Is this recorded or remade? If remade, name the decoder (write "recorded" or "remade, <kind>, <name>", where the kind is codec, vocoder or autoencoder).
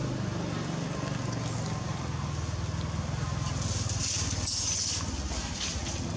recorded